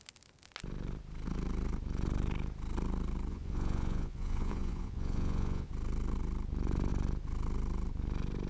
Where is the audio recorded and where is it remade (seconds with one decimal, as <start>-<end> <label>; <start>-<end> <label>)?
0.0-3.3 recorded; 3.3-5.7 remade; 5.7-8.5 recorded